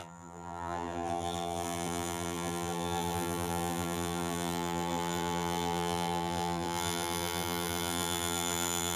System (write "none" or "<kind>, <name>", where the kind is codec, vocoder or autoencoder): vocoder, BigVGAN v2